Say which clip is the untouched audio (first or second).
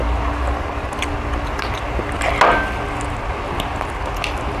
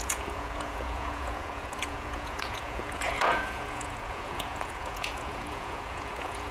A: first